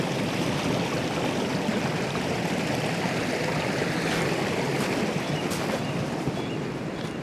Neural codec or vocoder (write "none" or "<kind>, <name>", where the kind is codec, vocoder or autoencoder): none